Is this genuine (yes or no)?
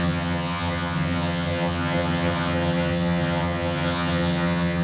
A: no